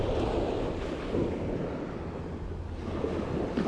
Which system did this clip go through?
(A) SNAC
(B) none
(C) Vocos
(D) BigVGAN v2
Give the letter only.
B